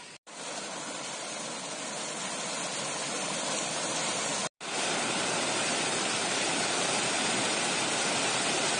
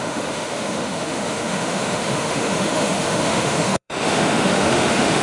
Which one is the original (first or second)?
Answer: first